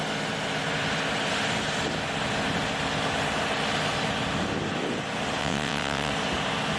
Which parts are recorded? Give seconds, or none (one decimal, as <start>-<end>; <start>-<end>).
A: 0.0-5.4; 6.1-6.8